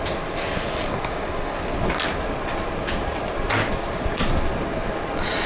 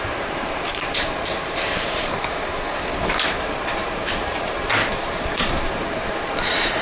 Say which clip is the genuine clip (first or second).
first